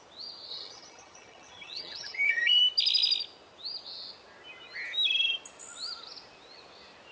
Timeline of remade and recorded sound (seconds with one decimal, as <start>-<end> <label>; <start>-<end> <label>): 0.0-0.5 recorded; 0.5-2.6 remade; 2.6-7.1 recorded